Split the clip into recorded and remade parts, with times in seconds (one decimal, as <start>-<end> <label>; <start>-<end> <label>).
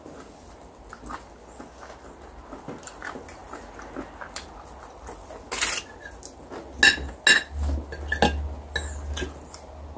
0.0-10.0 recorded